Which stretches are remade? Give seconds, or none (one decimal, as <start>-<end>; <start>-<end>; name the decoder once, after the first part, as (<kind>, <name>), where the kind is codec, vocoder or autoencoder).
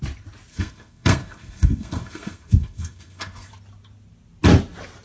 0.5-3.5 (codec, SNAC)